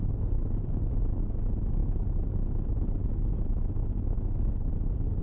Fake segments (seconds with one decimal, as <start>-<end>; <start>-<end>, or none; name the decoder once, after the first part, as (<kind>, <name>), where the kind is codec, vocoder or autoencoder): none